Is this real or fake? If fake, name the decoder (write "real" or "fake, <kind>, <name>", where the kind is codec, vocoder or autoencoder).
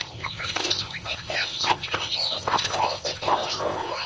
fake, codec, ZipCodec